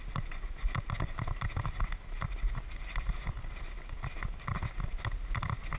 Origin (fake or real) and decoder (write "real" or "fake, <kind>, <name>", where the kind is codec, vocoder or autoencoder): real